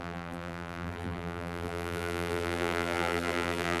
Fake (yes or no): yes